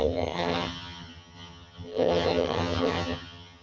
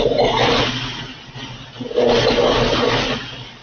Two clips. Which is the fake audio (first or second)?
first